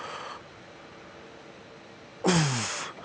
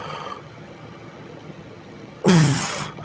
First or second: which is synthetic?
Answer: second